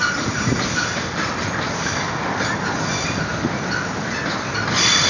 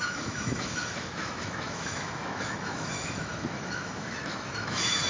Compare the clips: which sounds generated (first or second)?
second